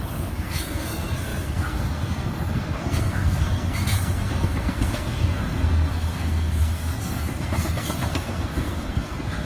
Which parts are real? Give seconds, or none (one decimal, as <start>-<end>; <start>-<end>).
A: none